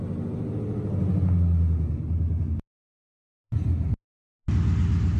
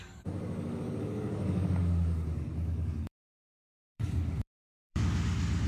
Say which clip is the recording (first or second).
first